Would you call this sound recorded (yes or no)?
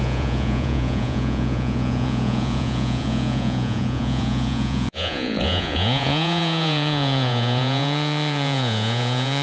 no